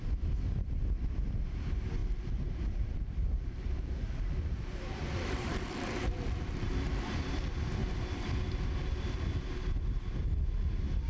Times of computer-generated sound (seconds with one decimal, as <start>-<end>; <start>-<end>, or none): 2.0-7.1; 7.8-8.4

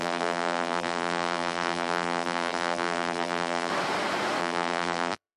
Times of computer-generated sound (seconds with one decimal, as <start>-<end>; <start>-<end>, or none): 0.0-3.7; 4.4-5.4

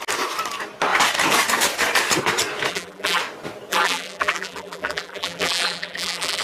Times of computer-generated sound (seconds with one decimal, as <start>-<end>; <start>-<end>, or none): 2.7-3.2; 3.7-6.4

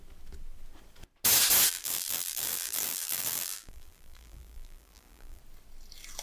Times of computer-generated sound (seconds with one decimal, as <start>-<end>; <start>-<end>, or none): 1.7-5.4